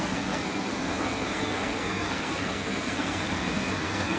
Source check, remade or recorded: remade